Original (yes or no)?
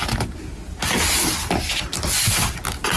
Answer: yes